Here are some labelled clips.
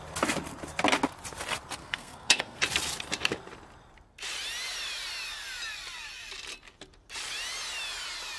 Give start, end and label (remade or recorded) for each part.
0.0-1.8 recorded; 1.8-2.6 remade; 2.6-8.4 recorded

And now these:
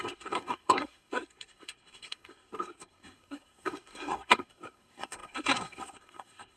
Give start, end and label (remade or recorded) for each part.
0.0-6.6 remade

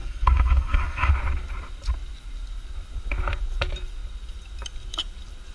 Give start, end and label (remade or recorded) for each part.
0.0-1.1 remade; 1.1-5.5 recorded

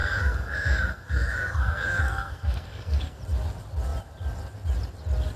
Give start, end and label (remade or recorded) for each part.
0.0-3.2 remade; 3.2-5.4 recorded

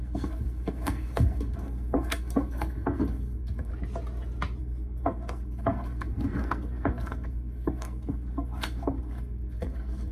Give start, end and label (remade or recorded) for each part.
0.0-3.7 remade; 3.7-4.6 recorded; 4.6-10.1 remade

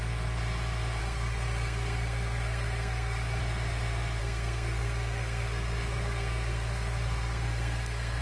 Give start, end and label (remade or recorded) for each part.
0.0-1.0 recorded; 1.0-3.4 remade; 3.4-4.2 recorded; 4.2-8.2 remade